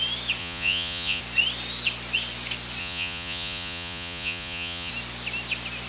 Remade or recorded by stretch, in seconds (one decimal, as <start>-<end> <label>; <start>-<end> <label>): 0.0-0.4 recorded; 0.4-1.2 remade; 1.2-2.8 recorded; 2.8-4.9 remade; 4.9-5.9 recorded